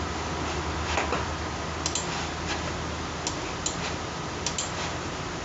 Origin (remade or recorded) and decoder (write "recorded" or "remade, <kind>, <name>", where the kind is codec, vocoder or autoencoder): recorded